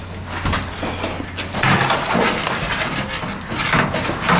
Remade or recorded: recorded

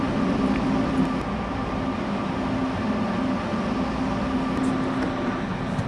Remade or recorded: recorded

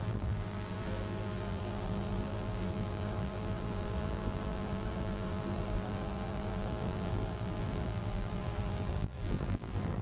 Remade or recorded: remade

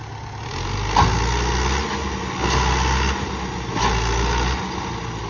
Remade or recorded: recorded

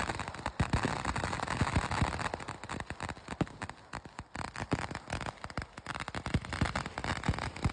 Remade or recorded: recorded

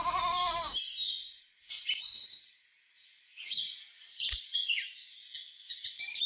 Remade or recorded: remade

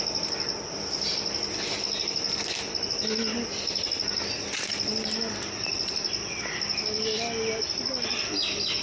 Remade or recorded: recorded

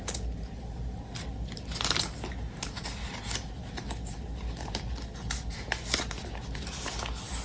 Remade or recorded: recorded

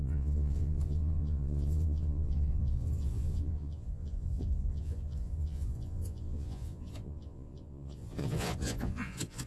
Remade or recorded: remade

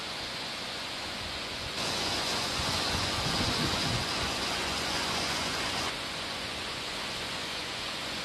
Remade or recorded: remade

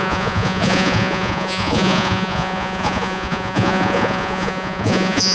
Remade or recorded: remade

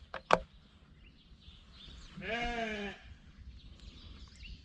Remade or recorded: recorded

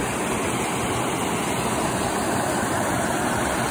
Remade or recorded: recorded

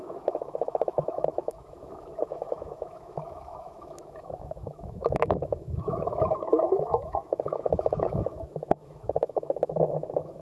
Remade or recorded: remade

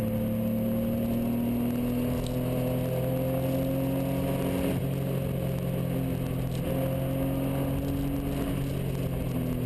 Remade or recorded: recorded